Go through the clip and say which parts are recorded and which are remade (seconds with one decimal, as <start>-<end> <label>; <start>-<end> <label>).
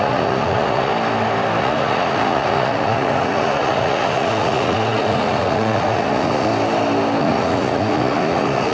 0.0-0.9 remade; 0.9-1.6 recorded; 1.6-6.5 remade; 6.5-7.2 recorded; 7.2-8.7 remade